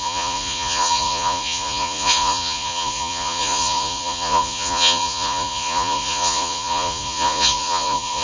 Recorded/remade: remade